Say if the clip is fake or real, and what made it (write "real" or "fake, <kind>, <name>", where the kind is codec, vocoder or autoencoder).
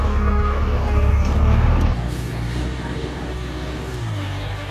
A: fake, codec, DAC